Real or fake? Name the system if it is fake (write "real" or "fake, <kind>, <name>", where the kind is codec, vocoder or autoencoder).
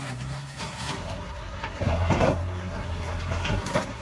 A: fake, codec, SNAC